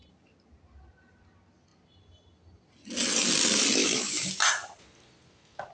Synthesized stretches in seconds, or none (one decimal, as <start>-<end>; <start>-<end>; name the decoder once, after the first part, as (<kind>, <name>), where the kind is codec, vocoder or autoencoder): 3.8-4.3 (autoencoder, DAC-VAE)